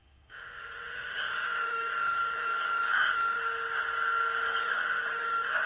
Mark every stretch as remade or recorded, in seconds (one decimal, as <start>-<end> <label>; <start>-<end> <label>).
0.0-3.4 remade; 3.4-4.6 recorded; 4.6-5.7 remade